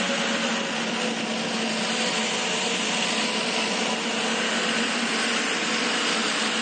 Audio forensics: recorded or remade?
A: recorded